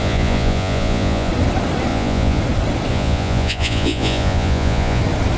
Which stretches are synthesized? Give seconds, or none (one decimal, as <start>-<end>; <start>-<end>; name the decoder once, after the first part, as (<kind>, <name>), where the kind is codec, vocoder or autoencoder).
0.0-1.3 (vocoder, Vocos); 1.9-2.4; 2.9-5.0